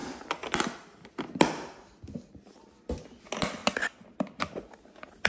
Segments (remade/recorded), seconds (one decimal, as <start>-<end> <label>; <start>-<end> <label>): 0.0-5.3 recorded